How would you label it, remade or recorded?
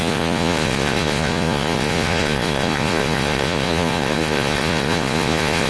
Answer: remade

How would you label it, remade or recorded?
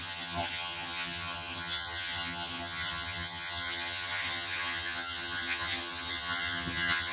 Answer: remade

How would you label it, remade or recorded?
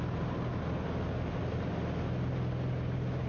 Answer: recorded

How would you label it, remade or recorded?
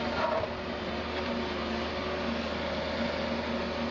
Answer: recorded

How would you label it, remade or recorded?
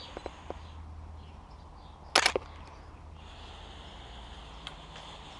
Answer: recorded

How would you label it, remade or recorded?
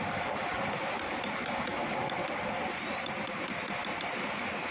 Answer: recorded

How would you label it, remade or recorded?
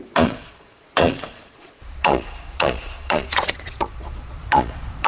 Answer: remade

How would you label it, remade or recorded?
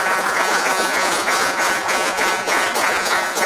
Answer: remade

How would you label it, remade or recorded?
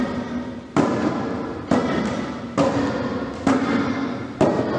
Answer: recorded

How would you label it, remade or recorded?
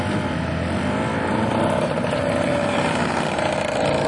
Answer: recorded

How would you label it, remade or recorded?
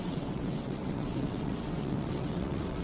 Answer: remade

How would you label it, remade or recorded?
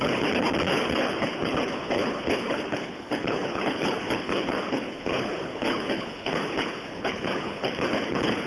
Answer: remade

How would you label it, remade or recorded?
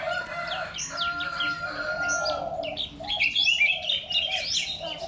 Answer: recorded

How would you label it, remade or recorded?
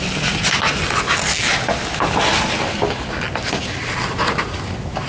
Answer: recorded